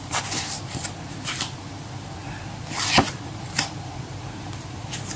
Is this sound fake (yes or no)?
yes